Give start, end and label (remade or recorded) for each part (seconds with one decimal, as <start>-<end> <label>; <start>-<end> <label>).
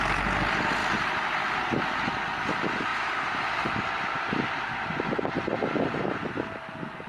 0.0-0.8 recorded; 0.8-2.2 remade; 2.2-2.9 recorded; 2.9-3.4 remade; 3.4-7.1 recorded